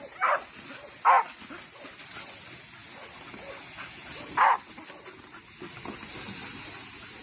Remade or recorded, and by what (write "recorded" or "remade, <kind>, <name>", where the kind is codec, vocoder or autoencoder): recorded